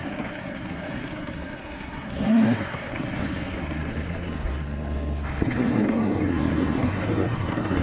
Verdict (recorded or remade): remade